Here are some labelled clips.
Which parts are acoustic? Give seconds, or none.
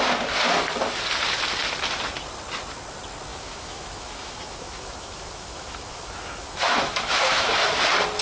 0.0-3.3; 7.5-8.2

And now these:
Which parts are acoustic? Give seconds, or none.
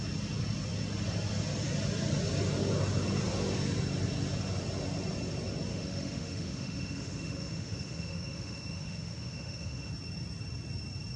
0.0-5.7; 9.9-11.2